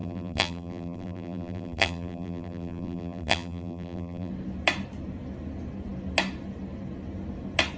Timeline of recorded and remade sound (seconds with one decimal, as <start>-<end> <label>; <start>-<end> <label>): 0.0-4.3 remade; 4.3-7.8 recorded